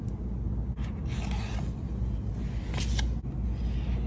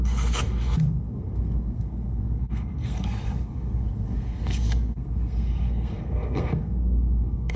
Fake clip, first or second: second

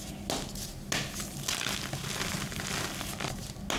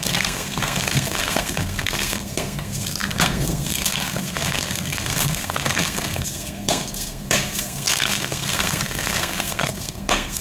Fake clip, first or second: second